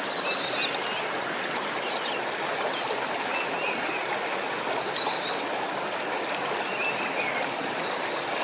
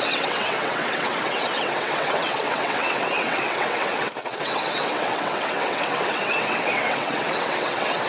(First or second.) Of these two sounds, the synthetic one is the second